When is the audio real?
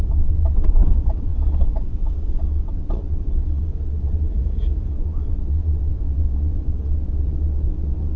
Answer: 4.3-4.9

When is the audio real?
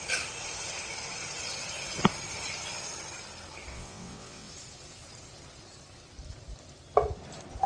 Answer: 0.0-3.7; 4.5-7.7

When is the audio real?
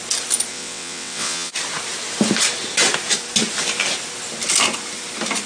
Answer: 0.0-0.5; 1.5-5.5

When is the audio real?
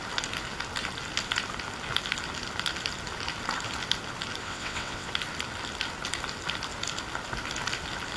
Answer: 0.0-4.4; 5.1-8.2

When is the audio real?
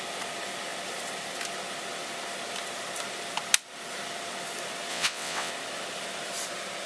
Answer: 0.0-4.9; 5.5-6.9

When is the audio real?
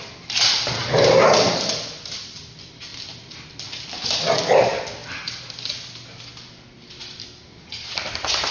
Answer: 0.0-8.5